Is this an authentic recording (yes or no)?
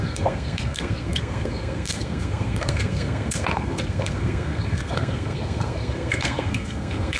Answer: no